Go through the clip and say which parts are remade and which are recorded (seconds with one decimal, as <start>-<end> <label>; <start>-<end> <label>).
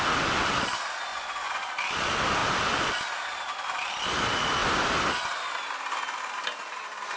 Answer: 0.0-1.1 recorded; 1.1-1.7 remade; 1.7-7.2 recorded